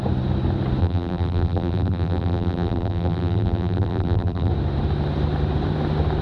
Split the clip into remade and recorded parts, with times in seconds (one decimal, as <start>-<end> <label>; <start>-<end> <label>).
0.0-0.8 recorded; 0.8-4.5 remade; 4.5-6.2 recorded